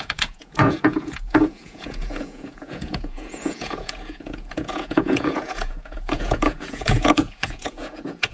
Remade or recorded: remade